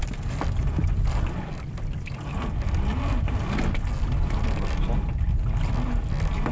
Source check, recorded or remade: recorded